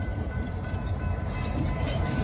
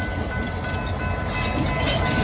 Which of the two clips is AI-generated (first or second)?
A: first